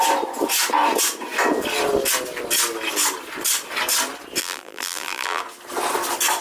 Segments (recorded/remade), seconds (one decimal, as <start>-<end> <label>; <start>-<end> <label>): 0.0-4.4 recorded; 4.4-5.4 remade; 5.4-6.4 recorded